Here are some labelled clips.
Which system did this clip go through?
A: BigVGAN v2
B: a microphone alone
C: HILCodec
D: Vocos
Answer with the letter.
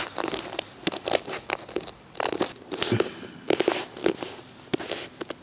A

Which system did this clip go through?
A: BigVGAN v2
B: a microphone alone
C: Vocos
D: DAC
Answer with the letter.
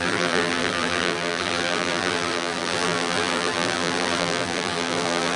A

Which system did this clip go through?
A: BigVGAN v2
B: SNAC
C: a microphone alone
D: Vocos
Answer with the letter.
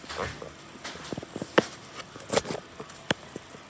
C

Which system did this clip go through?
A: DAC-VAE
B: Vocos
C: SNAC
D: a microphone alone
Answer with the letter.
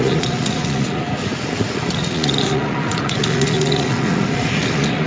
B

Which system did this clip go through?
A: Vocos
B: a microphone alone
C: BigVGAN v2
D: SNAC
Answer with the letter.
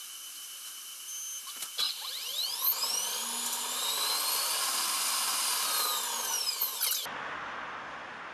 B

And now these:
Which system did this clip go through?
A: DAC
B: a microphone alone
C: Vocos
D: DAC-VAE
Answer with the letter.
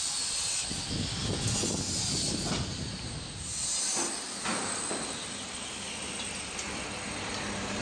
B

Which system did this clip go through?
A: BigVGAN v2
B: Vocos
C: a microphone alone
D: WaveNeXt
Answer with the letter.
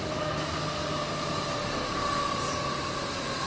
C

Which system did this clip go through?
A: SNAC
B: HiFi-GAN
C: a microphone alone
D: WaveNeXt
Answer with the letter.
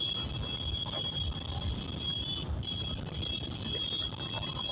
C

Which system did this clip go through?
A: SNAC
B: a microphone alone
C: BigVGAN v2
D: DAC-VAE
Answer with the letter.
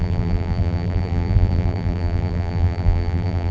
C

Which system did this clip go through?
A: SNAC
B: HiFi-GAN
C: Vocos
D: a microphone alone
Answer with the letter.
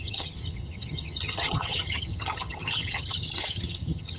B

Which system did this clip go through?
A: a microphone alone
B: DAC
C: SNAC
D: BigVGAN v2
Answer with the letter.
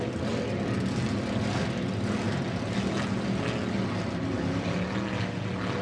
A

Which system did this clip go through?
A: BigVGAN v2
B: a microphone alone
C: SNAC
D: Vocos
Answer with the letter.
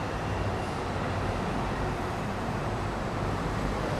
A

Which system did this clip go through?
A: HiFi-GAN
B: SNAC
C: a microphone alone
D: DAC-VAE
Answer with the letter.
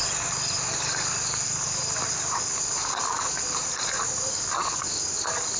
C